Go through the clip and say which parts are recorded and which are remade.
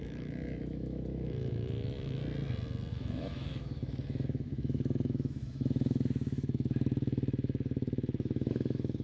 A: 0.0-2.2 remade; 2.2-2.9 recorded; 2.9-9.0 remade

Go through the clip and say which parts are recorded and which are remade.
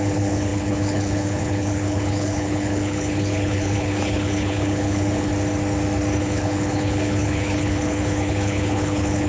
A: 0.0-5.3 remade; 5.3-6.2 recorded; 6.2-9.3 remade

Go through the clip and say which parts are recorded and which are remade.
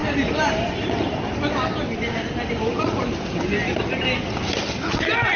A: 0.0-5.4 recorded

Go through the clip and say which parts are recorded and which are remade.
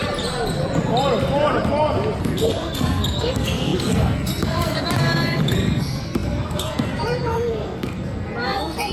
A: 0.0-2.2 recorded; 2.2-8.9 remade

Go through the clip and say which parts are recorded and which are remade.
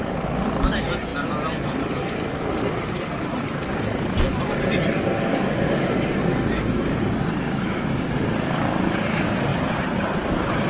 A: 0.0-1.1 recorded; 1.1-3.1 remade; 3.1-9.5 recorded; 9.5-10.7 remade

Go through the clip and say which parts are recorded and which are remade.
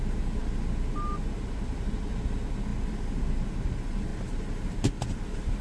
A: 0.0-5.6 recorded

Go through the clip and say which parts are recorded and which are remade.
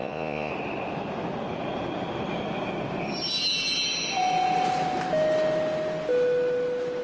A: 0.0-0.5 remade; 0.5-7.0 recorded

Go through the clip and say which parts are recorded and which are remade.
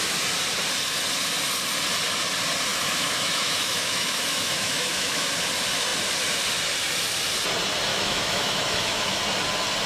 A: 0.0-2.7 recorded; 2.7-5.3 remade; 5.3-7.9 recorded; 7.9-9.2 remade; 9.2-9.9 recorded